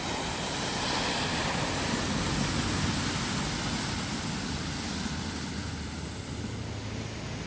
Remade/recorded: recorded